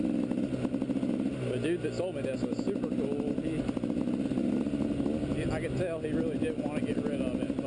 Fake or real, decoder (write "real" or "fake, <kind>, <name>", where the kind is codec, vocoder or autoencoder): real